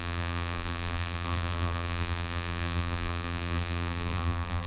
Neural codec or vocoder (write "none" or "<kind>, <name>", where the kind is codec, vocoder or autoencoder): vocoder, BigVGAN v2